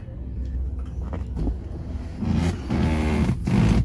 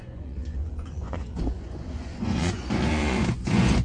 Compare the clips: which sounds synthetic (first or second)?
second